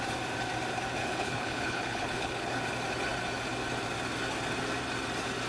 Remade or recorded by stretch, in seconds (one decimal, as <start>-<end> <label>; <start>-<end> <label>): 0.0-1.0 recorded; 1.0-2.6 remade; 2.6-5.5 recorded